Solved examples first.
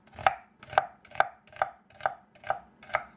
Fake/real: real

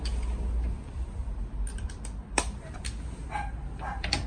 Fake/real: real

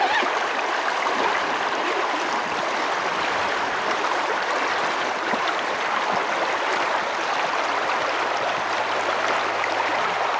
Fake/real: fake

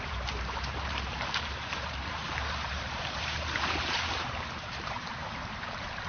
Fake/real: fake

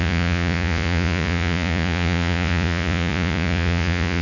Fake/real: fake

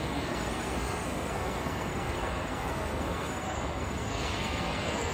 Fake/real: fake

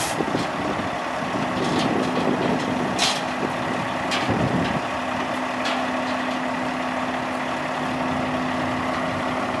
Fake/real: real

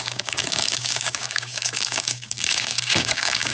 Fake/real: fake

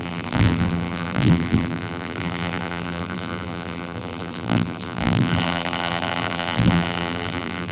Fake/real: fake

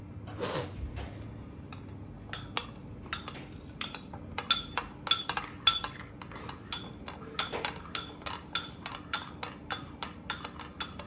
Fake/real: real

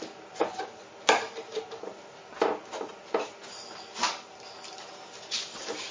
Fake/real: fake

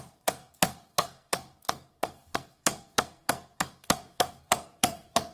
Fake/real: fake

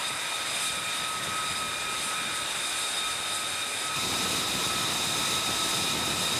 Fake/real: real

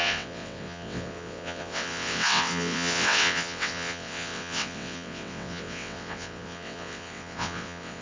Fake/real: fake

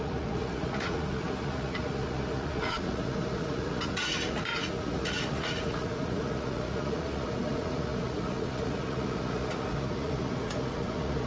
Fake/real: fake